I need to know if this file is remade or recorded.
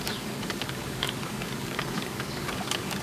remade